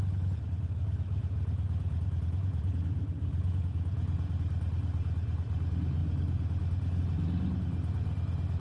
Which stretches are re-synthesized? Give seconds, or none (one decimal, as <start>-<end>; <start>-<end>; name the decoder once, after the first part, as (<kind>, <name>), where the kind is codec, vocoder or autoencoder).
1.2-4.3 (vocoder, Vocos)